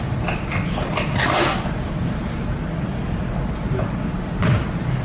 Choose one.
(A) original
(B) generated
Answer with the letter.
A